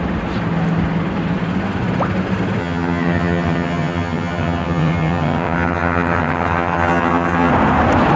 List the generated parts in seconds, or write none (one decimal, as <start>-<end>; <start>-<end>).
2.6-7.5